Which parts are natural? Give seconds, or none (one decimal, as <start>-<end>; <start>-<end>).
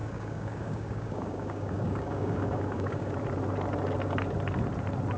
3.1-5.2